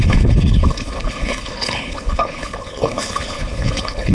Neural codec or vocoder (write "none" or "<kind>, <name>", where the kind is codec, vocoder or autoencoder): codec, HILCodec